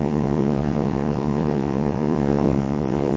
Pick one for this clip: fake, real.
fake